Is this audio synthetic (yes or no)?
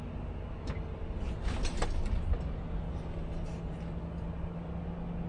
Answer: no